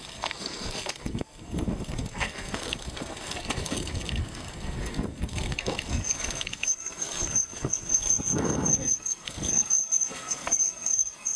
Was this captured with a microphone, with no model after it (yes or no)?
no